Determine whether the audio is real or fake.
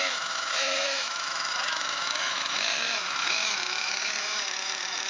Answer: fake